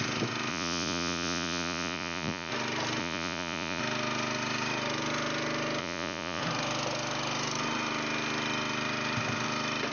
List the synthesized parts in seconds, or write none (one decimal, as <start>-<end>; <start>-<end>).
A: 0.5-2.5; 3.0-3.8; 5.8-6.4